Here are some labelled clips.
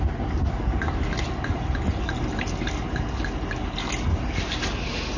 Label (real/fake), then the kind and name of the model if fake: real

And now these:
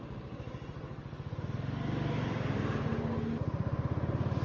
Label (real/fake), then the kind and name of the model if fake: real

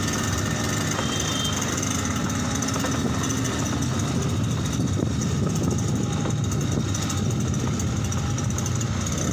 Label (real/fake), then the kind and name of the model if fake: real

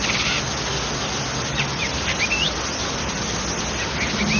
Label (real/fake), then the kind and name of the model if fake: real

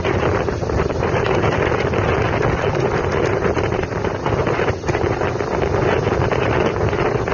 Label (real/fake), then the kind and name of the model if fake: real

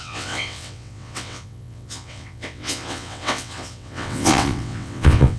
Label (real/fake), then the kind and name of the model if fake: fake, vocoder, WaveNeXt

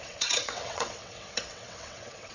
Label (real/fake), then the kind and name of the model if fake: fake, vocoder, WaveNeXt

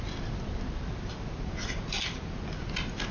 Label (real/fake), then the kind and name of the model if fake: real